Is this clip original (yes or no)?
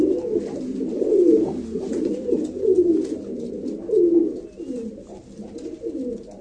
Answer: yes